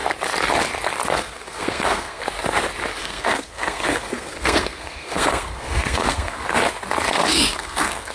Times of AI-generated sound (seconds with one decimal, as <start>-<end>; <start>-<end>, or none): 1.1-2.2; 3.0-6.4; 7.1-8.1